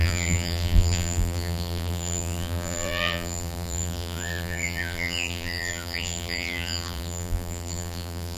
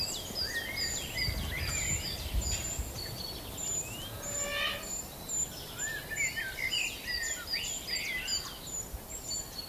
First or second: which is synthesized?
first